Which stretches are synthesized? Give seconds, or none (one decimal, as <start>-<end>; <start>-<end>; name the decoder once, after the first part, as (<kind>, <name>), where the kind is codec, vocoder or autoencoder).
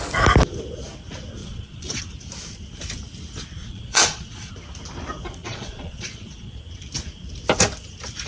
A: 1.4-2.0 (vocoder, Vocos); 3.6-4.5; 5.4-6.6